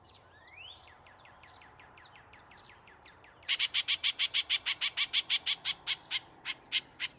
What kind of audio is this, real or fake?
fake